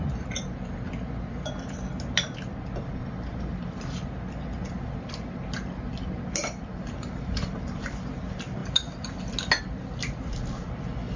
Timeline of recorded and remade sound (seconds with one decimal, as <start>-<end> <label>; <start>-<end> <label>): 0.0-6.4 recorded; 6.4-8.1 remade; 8.1-11.2 recorded